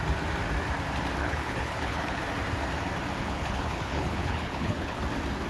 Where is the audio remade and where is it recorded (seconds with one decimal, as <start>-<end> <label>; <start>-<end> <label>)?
0.0-1.2 recorded; 1.2-2.2 remade; 2.2-3.2 recorded; 3.2-5.0 remade; 5.0-5.5 recorded